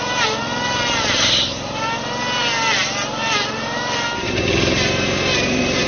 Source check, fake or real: fake